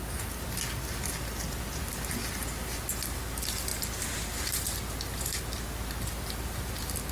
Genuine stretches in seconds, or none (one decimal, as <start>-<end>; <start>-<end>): 0.0-7.1